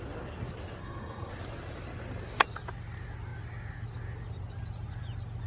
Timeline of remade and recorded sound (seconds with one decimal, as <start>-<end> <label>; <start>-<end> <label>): 0.0-0.8 recorded; 0.8-1.3 remade; 1.3-5.5 recorded